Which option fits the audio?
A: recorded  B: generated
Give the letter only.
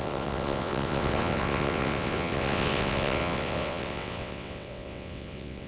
B